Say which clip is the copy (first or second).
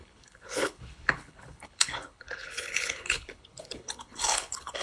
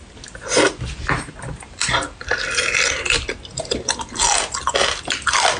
first